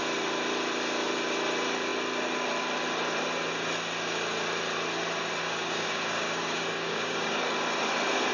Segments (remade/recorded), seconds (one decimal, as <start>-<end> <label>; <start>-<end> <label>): 0.0-5.4 recorded; 5.4-7.4 remade; 7.4-8.3 recorded